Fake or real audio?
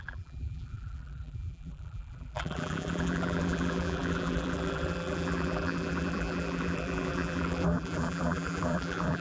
fake